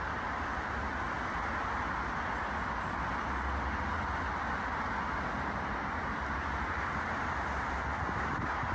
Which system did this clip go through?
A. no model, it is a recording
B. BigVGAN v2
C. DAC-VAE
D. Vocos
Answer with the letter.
A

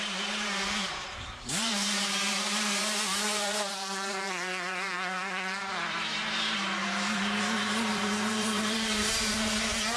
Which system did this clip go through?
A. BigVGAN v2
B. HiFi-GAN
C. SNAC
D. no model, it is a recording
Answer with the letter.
A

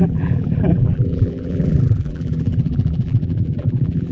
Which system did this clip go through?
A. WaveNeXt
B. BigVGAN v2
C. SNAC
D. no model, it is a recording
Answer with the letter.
B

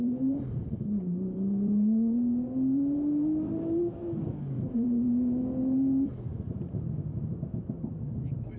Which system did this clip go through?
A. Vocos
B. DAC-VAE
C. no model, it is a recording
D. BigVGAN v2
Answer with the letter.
D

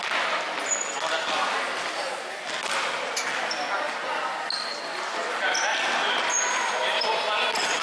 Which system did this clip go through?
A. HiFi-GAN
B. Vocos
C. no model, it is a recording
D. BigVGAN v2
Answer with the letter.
C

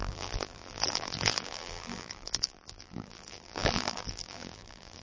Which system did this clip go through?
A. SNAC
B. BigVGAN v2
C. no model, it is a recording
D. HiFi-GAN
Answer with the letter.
B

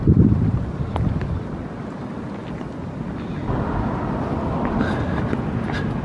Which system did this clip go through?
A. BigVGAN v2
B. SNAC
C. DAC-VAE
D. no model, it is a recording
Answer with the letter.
D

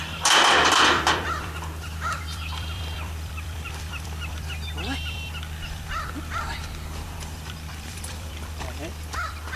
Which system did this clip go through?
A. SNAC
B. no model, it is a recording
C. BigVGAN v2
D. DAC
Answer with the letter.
C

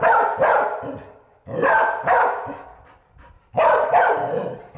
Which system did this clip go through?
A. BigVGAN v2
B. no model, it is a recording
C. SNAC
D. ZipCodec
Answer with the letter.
A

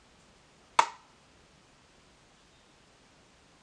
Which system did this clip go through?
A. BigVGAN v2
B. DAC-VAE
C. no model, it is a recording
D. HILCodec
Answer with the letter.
C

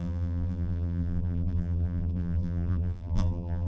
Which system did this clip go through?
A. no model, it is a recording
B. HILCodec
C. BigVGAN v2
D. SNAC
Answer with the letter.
C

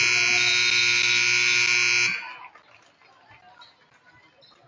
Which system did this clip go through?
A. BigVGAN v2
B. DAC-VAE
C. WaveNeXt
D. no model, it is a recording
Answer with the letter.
D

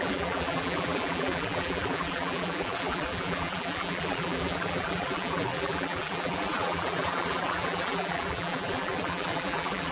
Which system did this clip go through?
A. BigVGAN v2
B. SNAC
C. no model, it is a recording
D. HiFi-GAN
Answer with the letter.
A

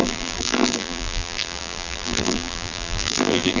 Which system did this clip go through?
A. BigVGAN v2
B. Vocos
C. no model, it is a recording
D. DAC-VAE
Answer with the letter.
A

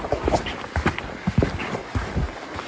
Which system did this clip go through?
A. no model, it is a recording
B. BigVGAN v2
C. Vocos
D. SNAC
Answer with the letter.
A